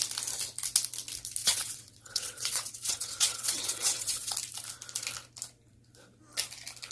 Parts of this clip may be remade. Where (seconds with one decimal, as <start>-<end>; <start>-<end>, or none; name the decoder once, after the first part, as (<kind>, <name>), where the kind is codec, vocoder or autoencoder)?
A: 1.4-4.3 (vocoder, WaveNeXt)